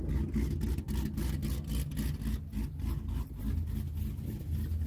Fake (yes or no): no